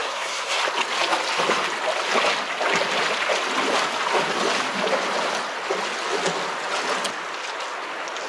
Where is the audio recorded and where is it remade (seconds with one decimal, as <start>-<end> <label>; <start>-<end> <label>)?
0.0-0.6 remade; 0.6-8.3 recorded